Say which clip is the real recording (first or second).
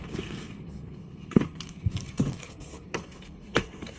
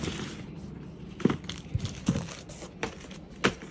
second